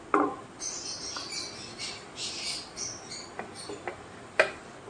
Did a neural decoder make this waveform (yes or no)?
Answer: no